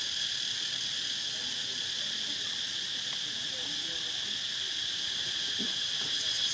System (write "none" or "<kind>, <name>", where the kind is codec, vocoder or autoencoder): none